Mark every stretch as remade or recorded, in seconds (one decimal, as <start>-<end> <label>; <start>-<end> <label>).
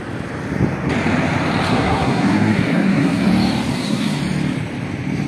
0.0-1.7 recorded; 1.7-3.3 remade; 3.3-3.7 recorded; 3.7-4.2 remade; 4.2-5.3 recorded